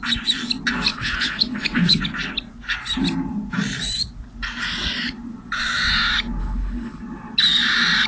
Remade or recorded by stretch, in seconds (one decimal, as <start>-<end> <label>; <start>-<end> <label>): 0.0-0.9 recorded; 0.9-2.0 remade; 2.0-6.4 recorded; 6.4-7.0 remade; 7.0-8.1 recorded